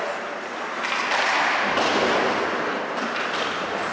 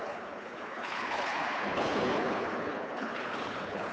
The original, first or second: first